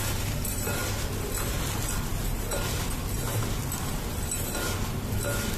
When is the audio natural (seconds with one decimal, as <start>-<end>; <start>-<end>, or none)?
0.0-5.6